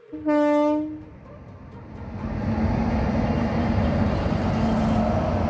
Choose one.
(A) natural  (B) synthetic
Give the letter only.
A